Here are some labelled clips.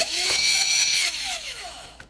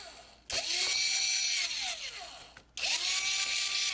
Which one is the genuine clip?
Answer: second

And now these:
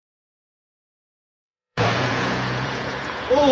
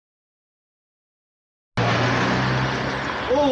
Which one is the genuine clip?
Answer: second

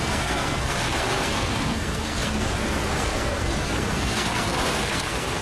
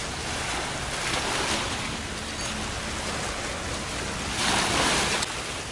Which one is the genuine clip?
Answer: second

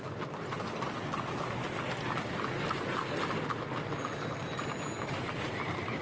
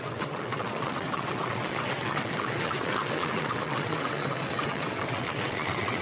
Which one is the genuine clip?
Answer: first